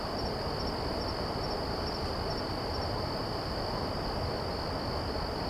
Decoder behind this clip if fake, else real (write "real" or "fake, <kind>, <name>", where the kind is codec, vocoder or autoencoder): real